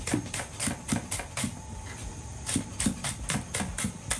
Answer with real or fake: fake